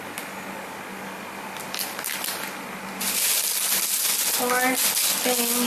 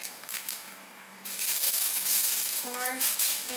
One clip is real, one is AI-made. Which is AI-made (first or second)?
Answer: second